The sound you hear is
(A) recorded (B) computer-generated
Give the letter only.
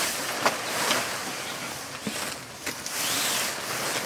A